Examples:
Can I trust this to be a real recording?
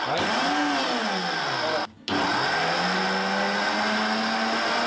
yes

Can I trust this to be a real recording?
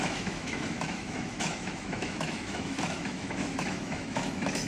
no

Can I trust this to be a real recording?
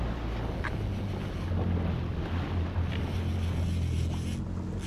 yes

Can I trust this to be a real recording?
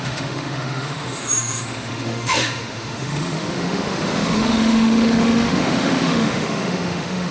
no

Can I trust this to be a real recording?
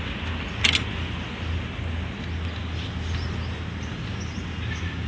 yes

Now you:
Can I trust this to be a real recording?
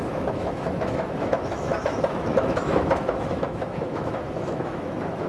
no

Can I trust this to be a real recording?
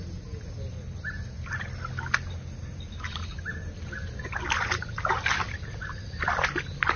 yes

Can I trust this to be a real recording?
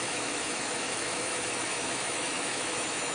no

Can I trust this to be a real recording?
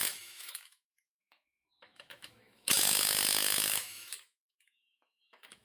no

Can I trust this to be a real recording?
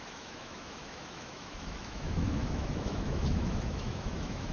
no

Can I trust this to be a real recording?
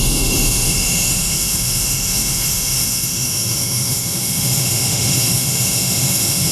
no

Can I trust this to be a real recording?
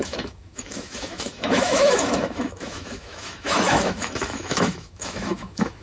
no